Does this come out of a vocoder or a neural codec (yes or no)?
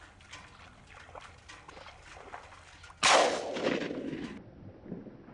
no